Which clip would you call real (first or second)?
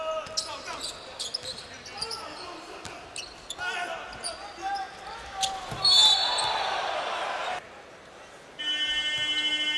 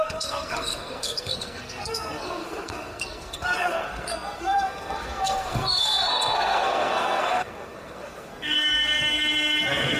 first